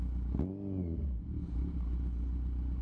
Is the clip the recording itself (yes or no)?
yes